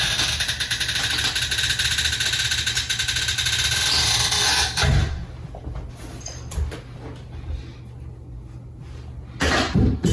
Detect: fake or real real